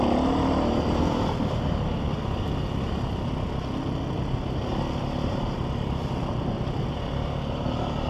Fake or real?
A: real